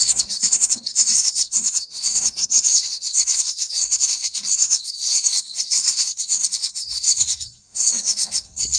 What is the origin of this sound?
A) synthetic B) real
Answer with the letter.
A